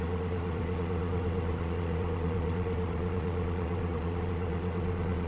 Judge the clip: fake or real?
fake